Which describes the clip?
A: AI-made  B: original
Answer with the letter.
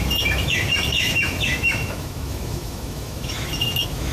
A